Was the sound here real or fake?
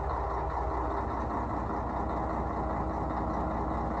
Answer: real